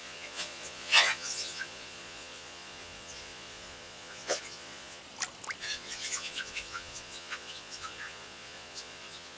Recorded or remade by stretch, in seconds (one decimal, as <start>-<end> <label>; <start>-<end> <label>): 0.0-5.0 remade; 5.0-5.6 recorded; 5.6-9.4 remade